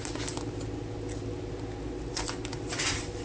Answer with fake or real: real